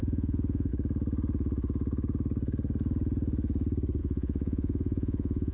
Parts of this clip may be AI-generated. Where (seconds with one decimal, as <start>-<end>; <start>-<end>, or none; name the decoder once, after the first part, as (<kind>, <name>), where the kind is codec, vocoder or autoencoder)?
0.0-0.7 (vocoder, Vocos); 4.0-5.5